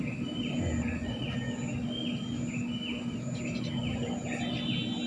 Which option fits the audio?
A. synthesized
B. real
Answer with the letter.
B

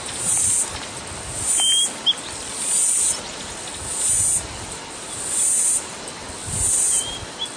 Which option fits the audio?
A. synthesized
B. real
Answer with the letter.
B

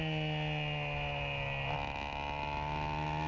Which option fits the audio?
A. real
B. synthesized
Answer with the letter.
A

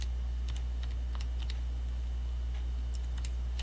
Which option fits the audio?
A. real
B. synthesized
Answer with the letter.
A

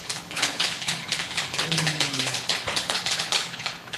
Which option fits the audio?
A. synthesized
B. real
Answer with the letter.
A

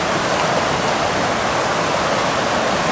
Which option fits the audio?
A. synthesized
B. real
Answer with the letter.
B